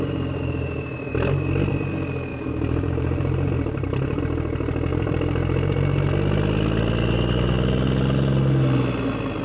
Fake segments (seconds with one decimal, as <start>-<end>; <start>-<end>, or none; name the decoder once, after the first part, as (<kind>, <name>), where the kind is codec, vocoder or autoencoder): 2.3-4.2 (vocoder, BigVGAN v2); 4.9-6.1